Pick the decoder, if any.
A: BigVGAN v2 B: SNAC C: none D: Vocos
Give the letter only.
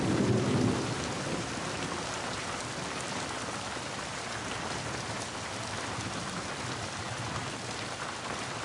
C